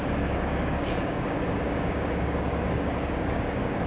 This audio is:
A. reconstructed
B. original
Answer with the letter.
A